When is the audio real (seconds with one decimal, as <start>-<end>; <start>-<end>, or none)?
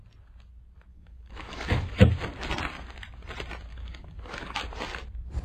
0.0-0.9; 2.1-3.7; 4.6-5.4